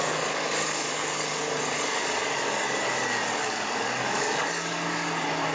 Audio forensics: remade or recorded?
remade